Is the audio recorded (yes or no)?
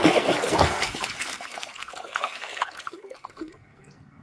no